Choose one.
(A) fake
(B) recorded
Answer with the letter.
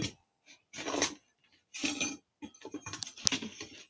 B